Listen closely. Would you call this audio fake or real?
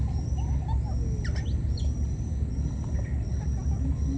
real